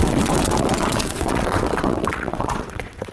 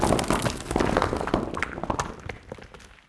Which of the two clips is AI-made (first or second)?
first